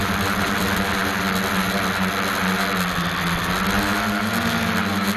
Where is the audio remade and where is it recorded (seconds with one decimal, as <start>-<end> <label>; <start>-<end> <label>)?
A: 0.0-5.2 recorded